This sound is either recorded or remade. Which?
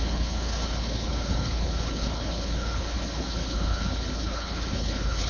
remade